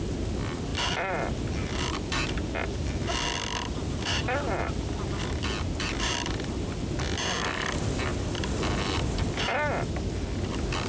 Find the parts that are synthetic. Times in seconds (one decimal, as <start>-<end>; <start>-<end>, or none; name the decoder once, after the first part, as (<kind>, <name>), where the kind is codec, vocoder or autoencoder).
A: 0.7-2.3 (vocoder, BigVGAN v2); 4.1-9.4